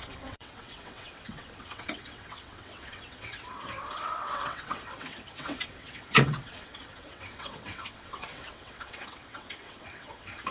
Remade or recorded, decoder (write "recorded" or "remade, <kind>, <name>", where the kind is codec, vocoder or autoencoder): remade, vocoder, WaveNeXt